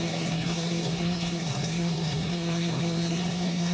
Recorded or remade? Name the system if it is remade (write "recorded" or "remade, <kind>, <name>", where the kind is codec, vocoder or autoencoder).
remade, codec, SNAC